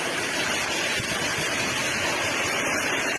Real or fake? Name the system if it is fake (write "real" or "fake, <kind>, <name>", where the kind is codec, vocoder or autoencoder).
fake, vocoder, BigVGAN v2